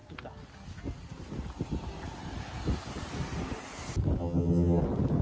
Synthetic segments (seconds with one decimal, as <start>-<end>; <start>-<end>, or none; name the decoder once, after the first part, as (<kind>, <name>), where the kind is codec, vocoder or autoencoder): 4.2-4.8 (vocoder, HiFi-GAN)